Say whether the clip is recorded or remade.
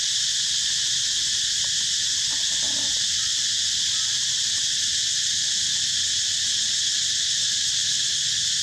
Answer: recorded